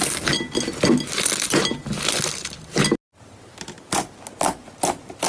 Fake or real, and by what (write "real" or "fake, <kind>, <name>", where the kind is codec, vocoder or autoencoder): real